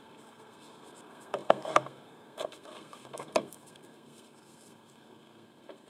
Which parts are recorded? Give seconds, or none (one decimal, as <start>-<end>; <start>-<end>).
none